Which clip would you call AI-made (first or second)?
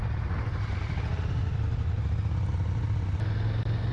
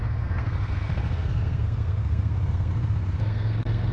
second